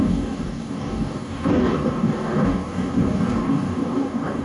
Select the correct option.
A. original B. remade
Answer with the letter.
B